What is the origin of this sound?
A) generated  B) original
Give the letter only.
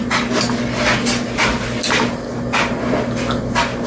B